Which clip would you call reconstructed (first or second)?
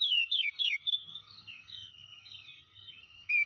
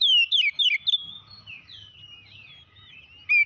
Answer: first